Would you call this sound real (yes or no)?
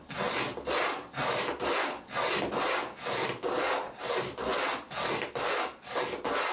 yes